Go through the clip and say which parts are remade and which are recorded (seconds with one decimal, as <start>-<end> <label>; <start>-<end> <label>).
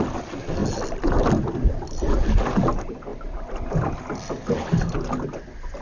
0.0-5.8 recorded